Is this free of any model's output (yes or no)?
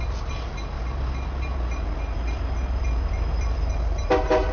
yes